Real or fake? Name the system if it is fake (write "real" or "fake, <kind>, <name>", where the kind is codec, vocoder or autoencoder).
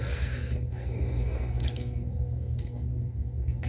fake, codec, SNAC